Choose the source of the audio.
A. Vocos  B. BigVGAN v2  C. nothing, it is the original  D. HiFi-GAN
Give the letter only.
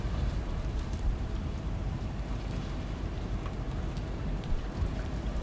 B